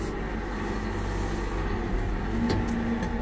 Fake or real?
real